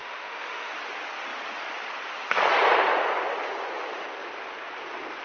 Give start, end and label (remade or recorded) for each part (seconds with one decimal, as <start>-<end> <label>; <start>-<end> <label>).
0.0-0.7 remade; 0.7-5.2 recorded